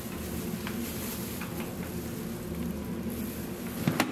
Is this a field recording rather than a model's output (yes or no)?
yes